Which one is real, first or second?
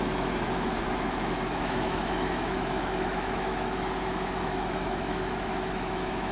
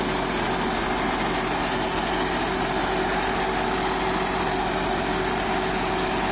second